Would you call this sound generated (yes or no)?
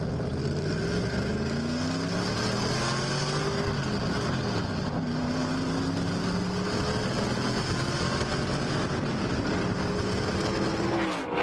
no